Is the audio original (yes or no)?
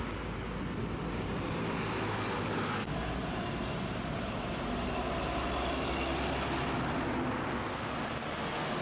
yes